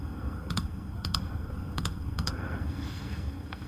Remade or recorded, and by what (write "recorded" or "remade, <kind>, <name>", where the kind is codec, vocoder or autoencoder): remade, codec, SNAC